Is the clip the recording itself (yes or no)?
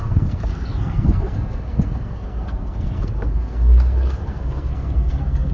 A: no